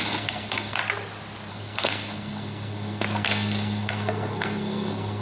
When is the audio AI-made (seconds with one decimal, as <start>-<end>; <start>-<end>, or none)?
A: 0.0-0.8; 1.5-5.2